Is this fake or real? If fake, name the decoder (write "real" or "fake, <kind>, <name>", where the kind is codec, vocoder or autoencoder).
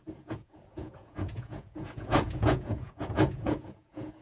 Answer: fake, vocoder, Vocos